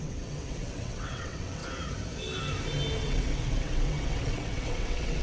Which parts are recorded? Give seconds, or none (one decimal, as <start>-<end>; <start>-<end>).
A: 1.6-3.0